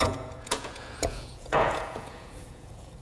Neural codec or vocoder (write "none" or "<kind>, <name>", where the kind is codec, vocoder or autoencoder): vocoder, Vocos